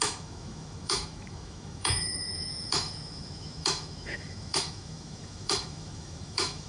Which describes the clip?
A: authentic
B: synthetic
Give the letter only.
B